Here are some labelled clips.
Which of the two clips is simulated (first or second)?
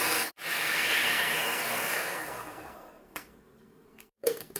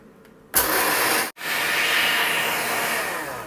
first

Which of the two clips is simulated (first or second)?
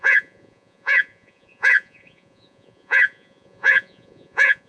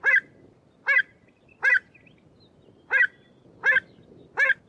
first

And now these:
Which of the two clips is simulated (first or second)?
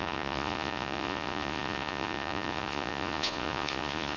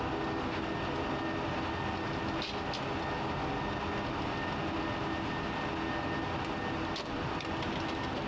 first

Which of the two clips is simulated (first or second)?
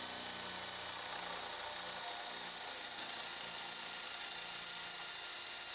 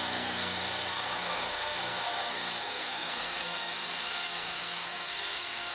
second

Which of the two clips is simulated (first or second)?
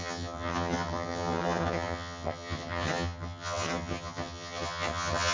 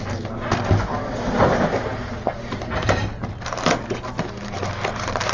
first